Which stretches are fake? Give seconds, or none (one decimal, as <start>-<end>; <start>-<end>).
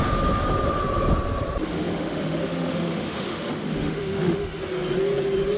1.6-4.6